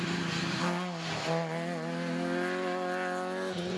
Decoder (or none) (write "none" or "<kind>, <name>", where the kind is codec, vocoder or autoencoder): none